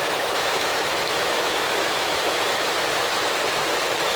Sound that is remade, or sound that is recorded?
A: remade